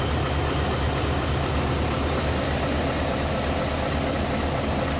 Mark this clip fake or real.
real